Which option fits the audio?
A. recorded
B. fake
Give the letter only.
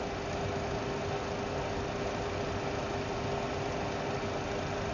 A